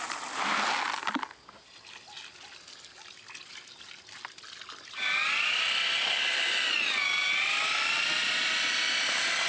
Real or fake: real